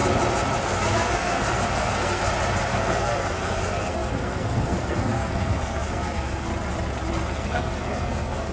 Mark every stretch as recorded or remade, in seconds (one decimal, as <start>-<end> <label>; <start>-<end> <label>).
0.0-0.6 recorded; 0.6-2.2 remade; 2.2-2.7 recorded; 2.7-6.5 remade; 6.5-7.3 recorded; 7.3-8.5 remade

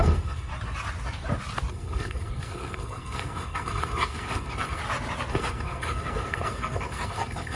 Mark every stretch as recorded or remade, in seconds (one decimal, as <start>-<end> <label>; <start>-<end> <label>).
0.0-0.5 remade; 0.5-1.7 recorded; 1.7-4.8 remade; 4.8-5.3 recorded; 5.3-7.6 remade

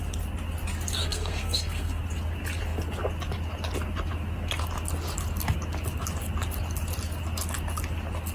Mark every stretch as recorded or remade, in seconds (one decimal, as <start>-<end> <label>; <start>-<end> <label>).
0.0-1.0 recorded; 1.0-2.0 remade; 2.0-8.3 recorded

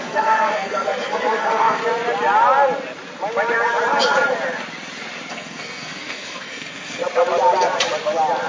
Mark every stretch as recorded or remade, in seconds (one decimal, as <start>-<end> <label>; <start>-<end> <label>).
0.0-1.8 remade; 1.8-5.3 recorded; 5.3-7.0 remade; 7.0-8.5 recorded

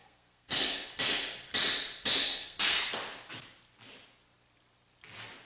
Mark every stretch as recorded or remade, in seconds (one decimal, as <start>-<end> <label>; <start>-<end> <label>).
0.0-0.9 remade; 0.9-2.2 recorded; 2.2-2.9 remade; 2.9-5.4 recorded